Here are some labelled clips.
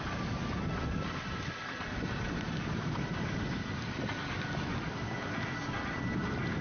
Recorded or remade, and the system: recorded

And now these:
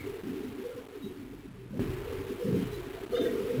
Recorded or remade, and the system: recorded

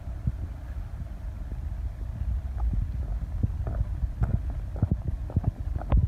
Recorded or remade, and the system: recorded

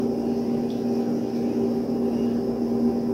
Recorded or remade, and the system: recorded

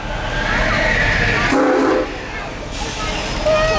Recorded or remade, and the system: recorded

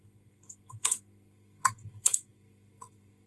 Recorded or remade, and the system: remade, codec, SNAC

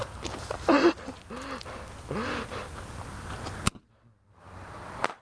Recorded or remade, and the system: recorded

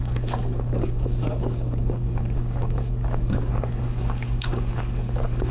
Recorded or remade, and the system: remade, codec, DAC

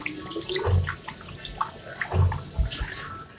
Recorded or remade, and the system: recorded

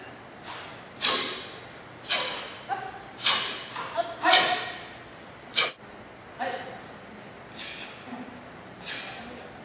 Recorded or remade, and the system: recorded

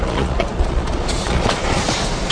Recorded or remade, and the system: remade, vocoder, Vocos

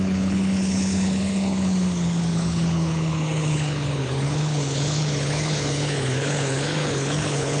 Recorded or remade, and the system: remade, codec, HILCodec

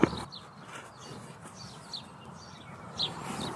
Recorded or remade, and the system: recorded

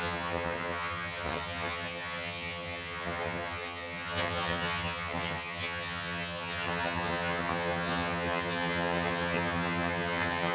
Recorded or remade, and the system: remade, vocoder, HiFi-GAN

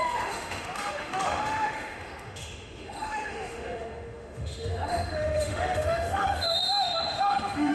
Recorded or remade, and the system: remade, autoencoder, DAC-VAE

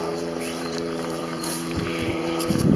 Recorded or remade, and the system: remade, vocoder, BigVGAN v2